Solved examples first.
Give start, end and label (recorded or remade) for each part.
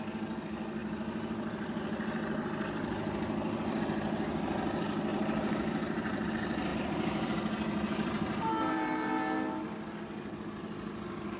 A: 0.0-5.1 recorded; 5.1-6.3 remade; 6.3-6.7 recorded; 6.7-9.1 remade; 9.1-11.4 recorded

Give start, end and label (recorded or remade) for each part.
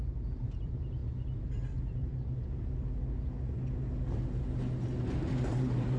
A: 0.0-1.0 remade; 1.0-1.7 recorded; 1.7-2.1 remade; 2.1-5.4 recorded; 5.4-6.0 remade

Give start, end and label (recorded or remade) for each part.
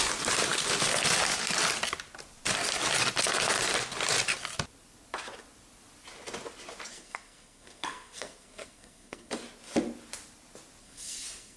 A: 0.0-6.9 recorded; 6.9-9.3 remade; 9.3-10.8 recorded; 10.8-11.6 remade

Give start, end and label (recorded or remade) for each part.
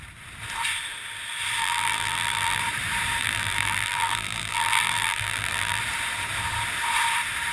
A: 0.0-1.6 recorded; 1.6-2.6 remade; 2.6-3.2 recorded; 3.2-5.8 remade; 5.8-7.5 recorded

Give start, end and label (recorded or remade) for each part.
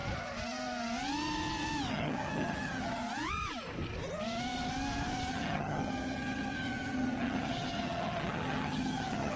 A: 0.0-1.9 recorded; 1.9-3.0 remade; 3.0-5.3 recorded; 5.3-9.4 remade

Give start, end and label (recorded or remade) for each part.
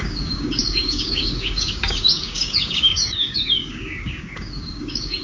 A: 0.0-5.2 remade